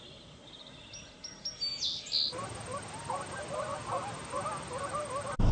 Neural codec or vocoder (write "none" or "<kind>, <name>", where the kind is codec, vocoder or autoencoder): none